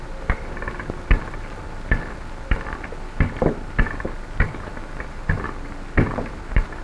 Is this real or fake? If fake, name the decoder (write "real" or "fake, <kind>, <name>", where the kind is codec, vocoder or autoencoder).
real